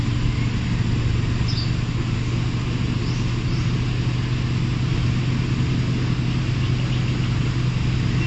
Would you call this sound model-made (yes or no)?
no